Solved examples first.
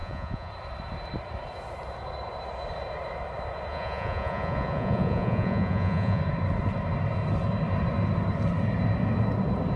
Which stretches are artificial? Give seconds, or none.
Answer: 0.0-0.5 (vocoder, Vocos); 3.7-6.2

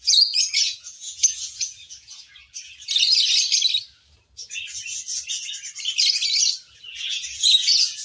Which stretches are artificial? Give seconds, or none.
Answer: 0.0-2.3 (vocoder, Vocos); 7.1-8.0

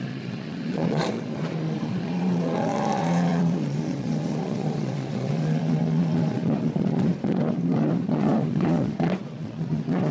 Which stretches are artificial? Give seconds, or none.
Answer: 0.0-10.1 (vocoder, Vocos)

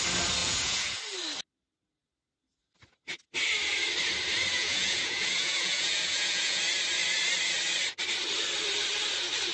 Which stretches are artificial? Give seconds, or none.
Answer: 0.4-1.0 (vocoder, Vocos); 4.5-6.6

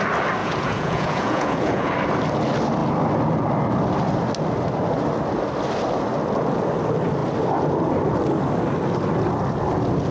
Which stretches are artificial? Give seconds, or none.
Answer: 0.4-1.9 (vocoder, Vocos)